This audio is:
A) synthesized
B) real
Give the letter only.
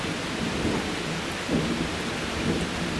B